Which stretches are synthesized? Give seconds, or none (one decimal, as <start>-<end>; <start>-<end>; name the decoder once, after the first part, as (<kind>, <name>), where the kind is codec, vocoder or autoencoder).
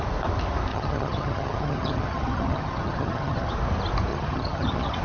0.7-3.5 (vocoder, HiFi-GAN); 4.1-5.0